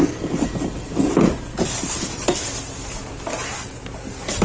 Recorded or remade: recorded